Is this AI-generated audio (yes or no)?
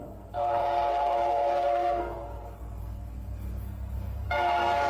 yes